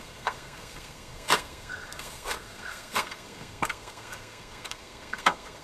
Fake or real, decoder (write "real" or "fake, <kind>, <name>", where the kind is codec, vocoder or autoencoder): fake, codec, SNAC